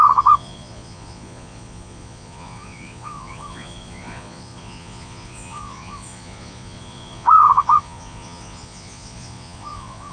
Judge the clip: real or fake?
fake